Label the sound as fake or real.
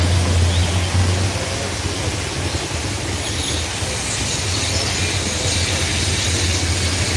real